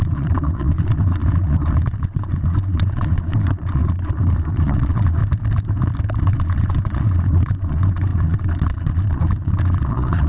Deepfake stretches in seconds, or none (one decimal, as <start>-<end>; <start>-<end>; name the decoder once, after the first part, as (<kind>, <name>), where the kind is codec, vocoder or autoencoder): 0.0-5.2 (vocoder, Vocos); 6.2-10.3